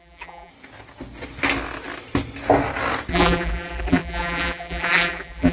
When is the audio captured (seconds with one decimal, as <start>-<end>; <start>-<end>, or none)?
0.5-3.1